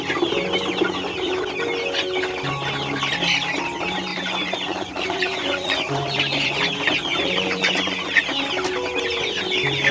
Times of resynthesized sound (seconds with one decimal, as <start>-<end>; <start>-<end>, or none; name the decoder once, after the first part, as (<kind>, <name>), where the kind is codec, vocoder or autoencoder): 4.1-8.2 (vocoder, Vocos)